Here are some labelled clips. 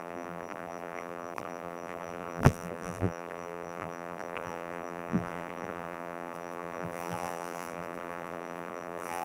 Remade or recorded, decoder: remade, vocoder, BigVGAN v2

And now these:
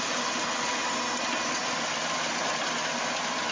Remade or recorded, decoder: recorded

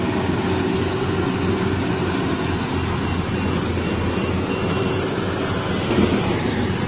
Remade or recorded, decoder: recorded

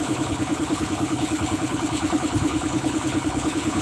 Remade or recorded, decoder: remade, codec, HILCodec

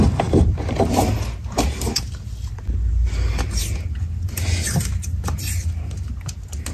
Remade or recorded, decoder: recorded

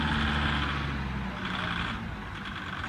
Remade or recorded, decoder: recorded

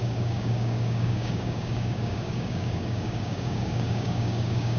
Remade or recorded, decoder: remade, codec, DAC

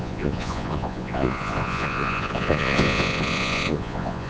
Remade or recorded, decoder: remade, vocoder, Vocos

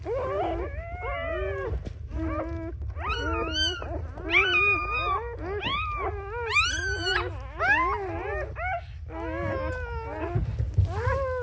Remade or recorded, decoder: recorded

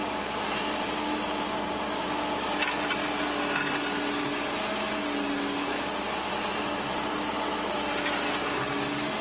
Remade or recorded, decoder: recorded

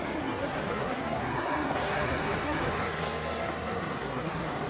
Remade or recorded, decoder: remade, codec, SNAC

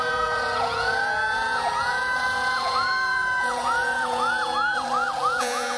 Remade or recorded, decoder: remade, vocoder, Vocos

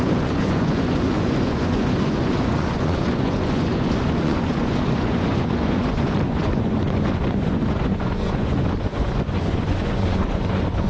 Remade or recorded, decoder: remade, vocoder, Vocos